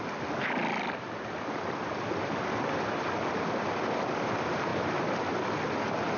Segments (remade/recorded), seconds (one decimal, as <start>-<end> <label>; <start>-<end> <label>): 0.0-6.2 recorded